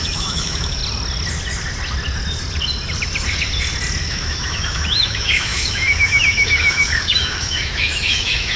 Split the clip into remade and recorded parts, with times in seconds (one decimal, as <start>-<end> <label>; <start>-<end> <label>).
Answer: 0.0-0.8 remade; 0.8-4.0 recorded; 4.0-8.6 remade